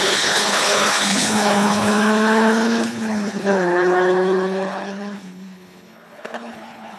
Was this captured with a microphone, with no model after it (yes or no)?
no